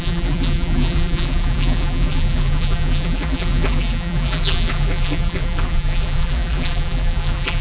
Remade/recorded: remade